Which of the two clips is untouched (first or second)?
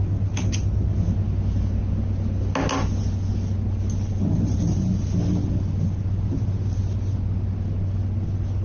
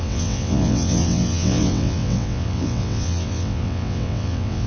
first